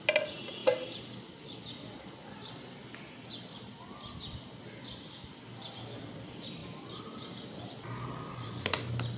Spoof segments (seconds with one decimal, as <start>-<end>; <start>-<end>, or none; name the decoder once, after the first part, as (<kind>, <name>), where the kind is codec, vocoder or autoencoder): none